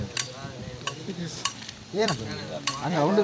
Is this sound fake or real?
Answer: fake